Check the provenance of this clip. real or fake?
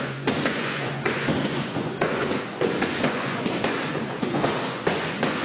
fake